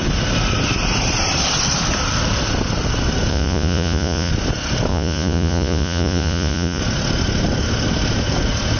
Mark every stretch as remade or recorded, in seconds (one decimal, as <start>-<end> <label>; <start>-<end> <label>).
0.0-3.3 recorded; 3.3-4.3 remade; 4.3-4.9 recorded; 4.9-6.8 remade; 6.8-8.8 recorded